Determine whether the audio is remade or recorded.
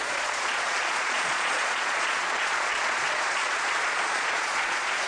remade